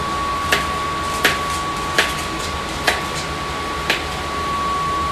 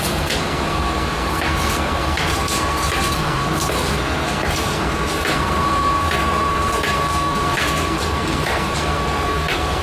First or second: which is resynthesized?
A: second